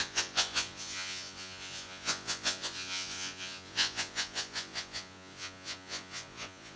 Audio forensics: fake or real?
fake